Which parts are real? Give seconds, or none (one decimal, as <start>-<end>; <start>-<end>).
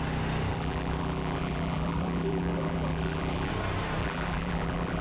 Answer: 0.0-0.5; 3.5-4.0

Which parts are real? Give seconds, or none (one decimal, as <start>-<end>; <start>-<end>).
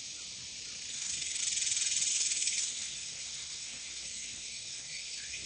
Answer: 0.0-0.9; 1.4-2.1